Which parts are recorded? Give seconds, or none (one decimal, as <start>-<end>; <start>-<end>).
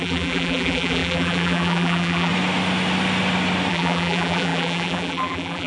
2.3-3.7